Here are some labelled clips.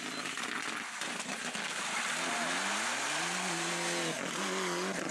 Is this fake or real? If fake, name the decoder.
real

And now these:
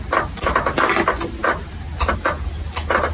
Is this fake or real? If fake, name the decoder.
real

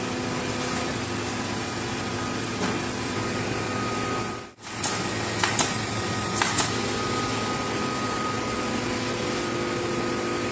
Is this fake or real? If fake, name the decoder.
real